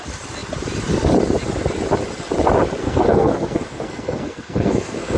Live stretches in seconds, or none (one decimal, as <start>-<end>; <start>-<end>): 0.0-2.8